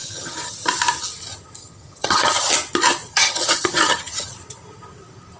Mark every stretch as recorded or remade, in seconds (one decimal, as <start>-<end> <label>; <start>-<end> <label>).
0.0-0.5 remade; 0.5-1.6 recorded; 1.6-2.5 remade; 2.5-3.1 recorded; 3.1-4.3 remade; 4.3-5.4 recorded